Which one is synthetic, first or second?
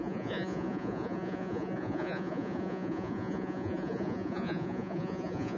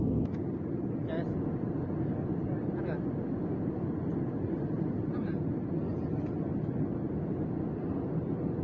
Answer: first